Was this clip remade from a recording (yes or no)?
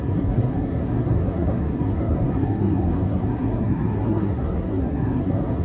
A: yes